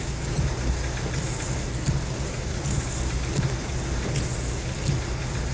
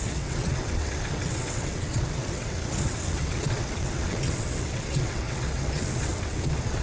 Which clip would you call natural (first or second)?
first